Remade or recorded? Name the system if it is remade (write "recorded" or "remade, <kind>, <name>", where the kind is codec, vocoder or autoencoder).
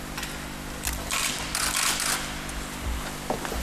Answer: recorded